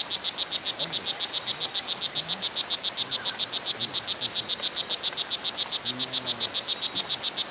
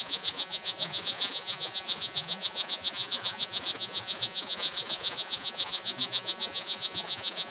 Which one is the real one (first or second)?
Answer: first